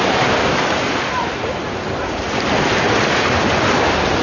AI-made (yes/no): no